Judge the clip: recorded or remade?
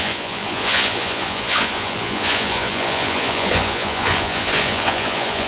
remade